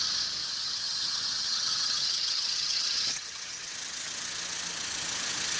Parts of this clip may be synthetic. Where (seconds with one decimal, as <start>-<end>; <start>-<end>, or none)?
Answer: 0.4-3.7

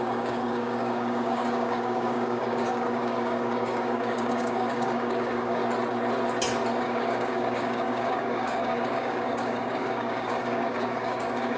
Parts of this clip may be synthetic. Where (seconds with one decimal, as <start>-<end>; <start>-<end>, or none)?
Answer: 0.0-5.6; 6.8-11.6

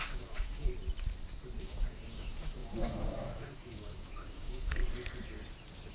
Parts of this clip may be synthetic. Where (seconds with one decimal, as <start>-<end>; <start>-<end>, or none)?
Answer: 0.0-0.7; 1.6-4.8

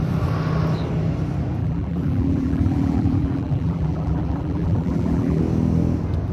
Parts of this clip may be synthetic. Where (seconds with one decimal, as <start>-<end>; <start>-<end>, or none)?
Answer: 1.6-5.4

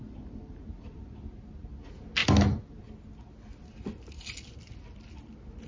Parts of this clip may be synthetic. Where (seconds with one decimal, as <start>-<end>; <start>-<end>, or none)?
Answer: none

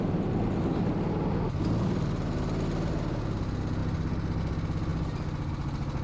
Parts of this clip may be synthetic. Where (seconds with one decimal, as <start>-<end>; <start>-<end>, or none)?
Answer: none

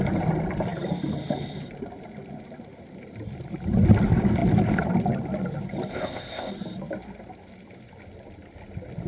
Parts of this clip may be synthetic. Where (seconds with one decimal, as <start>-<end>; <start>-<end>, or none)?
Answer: 5.9-6.5